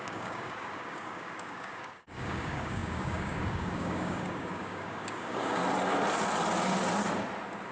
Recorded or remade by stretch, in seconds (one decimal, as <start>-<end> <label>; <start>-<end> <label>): 0.0-5.6 remade; 5.6-7.7 recorded